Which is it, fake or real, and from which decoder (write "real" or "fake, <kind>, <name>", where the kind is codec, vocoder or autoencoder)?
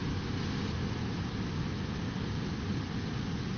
real